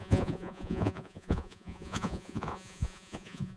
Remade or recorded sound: remade